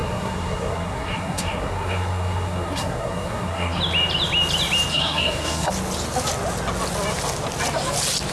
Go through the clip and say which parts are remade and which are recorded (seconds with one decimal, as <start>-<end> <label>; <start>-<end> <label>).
0.0-3.8 remade; 3.8-4.9 recorded; 4.9-5.7 remade; 5.7-8.3 recorded

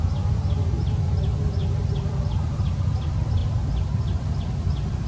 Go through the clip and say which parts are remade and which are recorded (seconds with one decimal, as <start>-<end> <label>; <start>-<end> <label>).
0.0-5.1 recorded